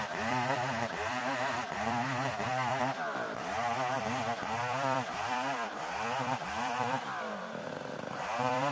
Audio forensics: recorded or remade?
remade